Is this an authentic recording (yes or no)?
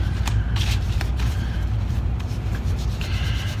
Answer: no